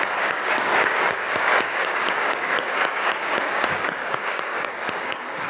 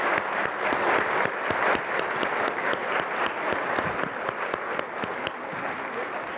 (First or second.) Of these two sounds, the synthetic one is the first